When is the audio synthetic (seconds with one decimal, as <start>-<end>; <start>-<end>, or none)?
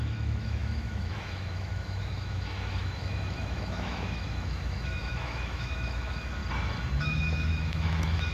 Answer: 0.0-6.4; 7.0-8.3